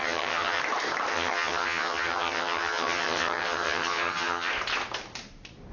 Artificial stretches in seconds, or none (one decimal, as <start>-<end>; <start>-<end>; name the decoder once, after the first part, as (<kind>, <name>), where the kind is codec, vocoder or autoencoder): 0.0-0.6 (vocoder, HiFi-GAN); 1.1-4.5